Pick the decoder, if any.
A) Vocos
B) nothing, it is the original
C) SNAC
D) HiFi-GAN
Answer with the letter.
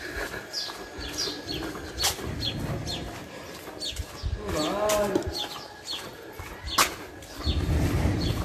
B